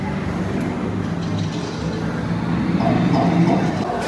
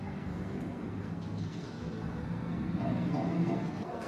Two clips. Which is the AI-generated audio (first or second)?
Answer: second